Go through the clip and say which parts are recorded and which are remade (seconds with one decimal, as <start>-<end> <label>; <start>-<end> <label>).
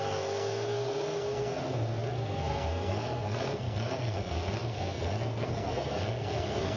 0.0-6.8 remade